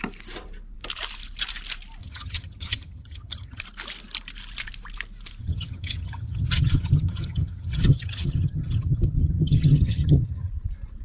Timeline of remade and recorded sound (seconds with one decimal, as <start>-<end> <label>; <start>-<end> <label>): 0.0-2.0 recorded; 2.0-3.6 remade; 3.6-5.4 recorded; 5.4-10.5 remade; 10.5-11.0 recorded